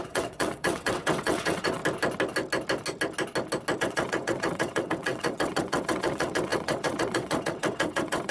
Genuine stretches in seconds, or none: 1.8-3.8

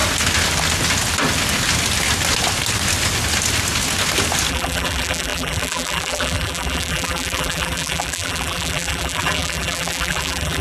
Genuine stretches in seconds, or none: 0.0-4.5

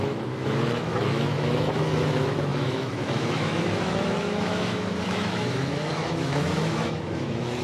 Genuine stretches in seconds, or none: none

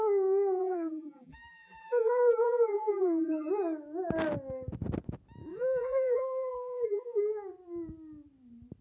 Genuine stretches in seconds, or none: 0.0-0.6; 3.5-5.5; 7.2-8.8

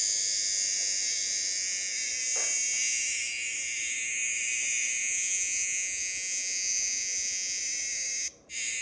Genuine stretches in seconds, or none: 0.0-5.0; 7.6-8.8